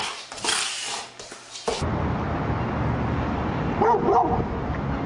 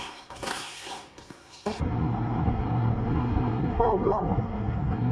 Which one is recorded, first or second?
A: first